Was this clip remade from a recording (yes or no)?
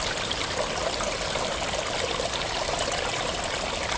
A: no